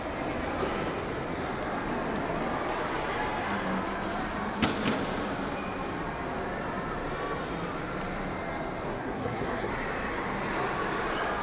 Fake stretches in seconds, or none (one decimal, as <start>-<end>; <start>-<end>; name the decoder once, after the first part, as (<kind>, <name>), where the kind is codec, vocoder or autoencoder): 8.9-9.7 (codec, SNAC)